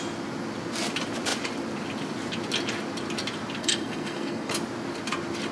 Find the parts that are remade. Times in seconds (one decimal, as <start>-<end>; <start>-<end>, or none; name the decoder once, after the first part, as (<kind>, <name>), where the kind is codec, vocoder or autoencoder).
3.6-4.5 (codec, SNAC)